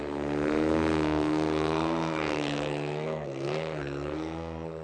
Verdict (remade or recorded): remade